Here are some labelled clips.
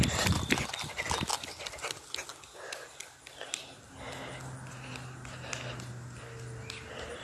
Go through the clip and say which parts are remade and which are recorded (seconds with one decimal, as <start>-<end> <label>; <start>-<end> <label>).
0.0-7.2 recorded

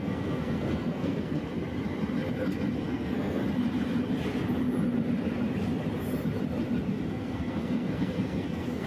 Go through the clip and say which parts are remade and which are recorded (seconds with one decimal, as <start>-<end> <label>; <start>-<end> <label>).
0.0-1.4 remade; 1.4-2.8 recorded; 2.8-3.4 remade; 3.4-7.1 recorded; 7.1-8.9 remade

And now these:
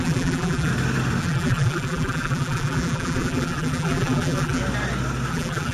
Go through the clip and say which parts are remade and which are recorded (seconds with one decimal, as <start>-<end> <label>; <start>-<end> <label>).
0.0-0.7 remade; 0.7-1.2 recorded; 1.2-4.6 remade; 4.6-5.3 recorded; 5.3-5.7 remade

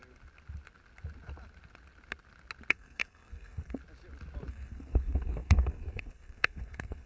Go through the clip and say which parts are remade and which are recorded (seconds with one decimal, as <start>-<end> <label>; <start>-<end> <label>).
0.0-2.7 recorded; 2.7-3.8 remade; 3.8-4.5 recorded; 4.5-7.1 remade

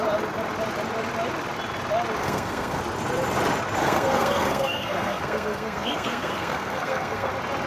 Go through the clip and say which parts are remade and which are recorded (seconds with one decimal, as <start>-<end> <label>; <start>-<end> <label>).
0.0-2.2 recorded; 2.2-2.8 remade; 2.8-3.8 recorded; 3.8-7.3 remade; 7.3-7.7 recorded

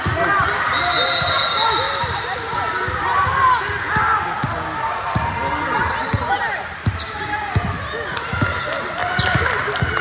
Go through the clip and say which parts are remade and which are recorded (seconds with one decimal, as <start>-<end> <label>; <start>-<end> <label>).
0.0-10.0 recorded

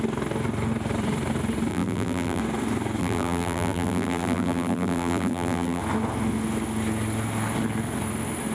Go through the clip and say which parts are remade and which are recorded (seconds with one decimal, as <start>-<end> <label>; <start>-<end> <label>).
0.0-1.7 recorded; 1.7-2.4 remade; 2.4-3.0 recorded; 3.0-5.8 remade; 5.8-8.5 recorded